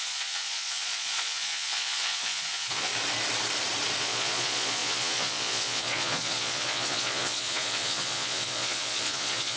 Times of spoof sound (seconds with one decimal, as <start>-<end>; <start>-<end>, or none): 0.0-2.9; 4.0-9.6